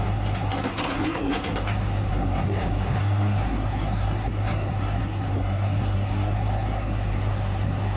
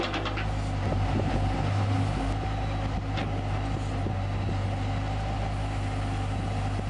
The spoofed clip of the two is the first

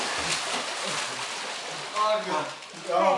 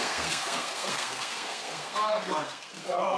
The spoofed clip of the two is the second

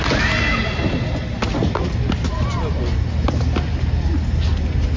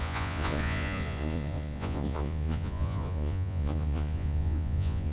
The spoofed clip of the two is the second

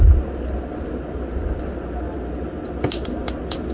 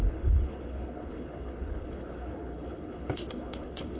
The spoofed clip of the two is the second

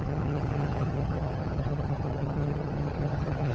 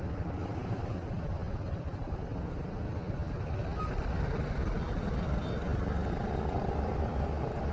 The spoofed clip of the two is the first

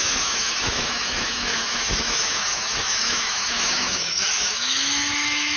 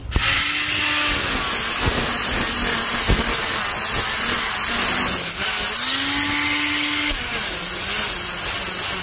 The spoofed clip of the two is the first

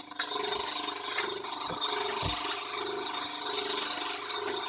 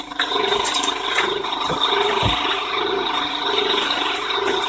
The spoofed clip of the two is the second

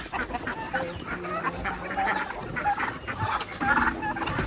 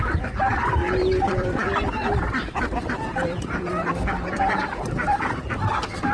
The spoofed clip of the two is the second